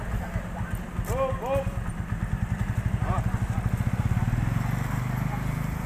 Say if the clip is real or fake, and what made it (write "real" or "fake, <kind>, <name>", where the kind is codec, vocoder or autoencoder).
real